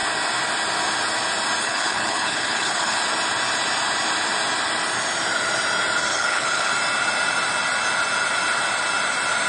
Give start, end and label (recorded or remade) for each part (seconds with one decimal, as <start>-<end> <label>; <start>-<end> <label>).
0.0-1.6 recorded; 1.6-3.0 remade; 3.0-6.1 recorded; 6.1-6.7 remade; 6.7-9.5 recorded